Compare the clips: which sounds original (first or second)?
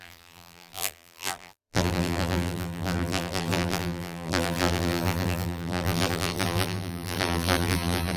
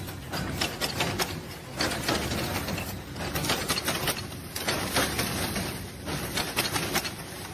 second